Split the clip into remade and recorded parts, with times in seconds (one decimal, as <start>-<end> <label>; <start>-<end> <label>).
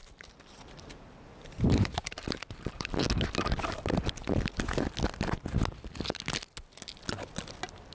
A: 0.0-2.9 remade; 2.9-7.9 recorded